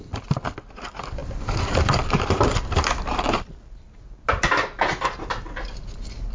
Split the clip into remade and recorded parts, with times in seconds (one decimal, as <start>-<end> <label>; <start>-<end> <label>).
0.0-6.3 recorded